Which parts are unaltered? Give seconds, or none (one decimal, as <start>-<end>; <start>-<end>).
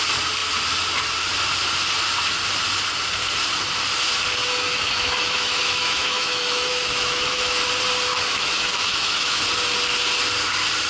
0.0-4.4; 7.6-8.1; 9.4-10.9